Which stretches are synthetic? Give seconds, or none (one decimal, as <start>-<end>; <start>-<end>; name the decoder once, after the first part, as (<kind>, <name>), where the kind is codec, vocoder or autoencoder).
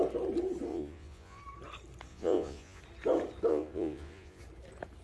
0.7-1.4 (vocoder, Vocos); 2.1-2.8; 3.5-4.4